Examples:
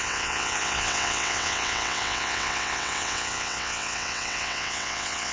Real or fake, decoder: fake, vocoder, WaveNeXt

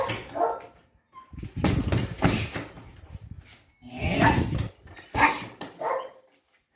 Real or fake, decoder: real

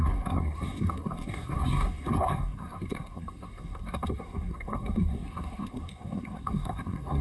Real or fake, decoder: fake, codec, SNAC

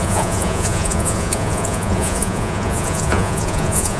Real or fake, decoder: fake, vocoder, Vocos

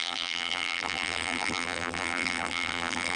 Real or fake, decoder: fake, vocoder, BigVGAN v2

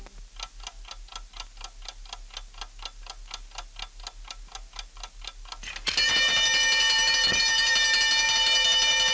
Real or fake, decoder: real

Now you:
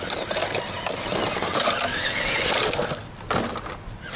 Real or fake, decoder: real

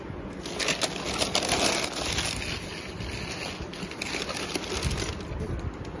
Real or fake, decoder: real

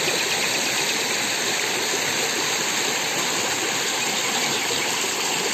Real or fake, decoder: real